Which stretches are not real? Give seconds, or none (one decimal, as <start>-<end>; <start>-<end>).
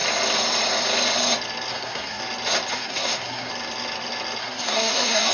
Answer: 1.7-2.2; 2.7-3.5; 4.4-5.3